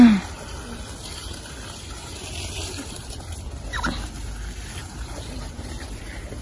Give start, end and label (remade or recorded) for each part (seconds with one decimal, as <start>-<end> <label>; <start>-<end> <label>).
0.0-4.8 recorded; 4.8-6.0 remade; 6.0-6.4 recorded